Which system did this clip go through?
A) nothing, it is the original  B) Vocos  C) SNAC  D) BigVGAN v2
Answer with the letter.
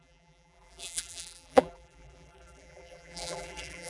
D